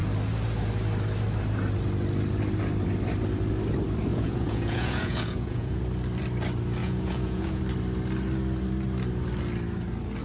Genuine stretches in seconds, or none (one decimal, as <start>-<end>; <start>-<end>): 0.0-4.1; 5.8-6.8; 7.6-10.2